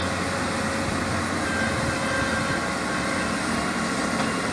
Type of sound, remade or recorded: recorded